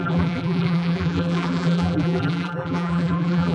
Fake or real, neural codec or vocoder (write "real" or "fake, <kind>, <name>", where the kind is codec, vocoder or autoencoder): fake, vocoder, BigVGAN v2